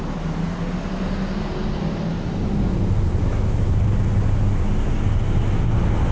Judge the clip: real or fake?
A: real